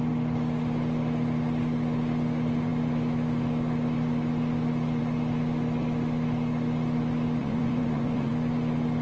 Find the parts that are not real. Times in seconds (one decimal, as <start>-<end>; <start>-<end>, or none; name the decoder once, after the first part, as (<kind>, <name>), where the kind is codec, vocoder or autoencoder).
7.4-8.3 (vocoder, Vocos)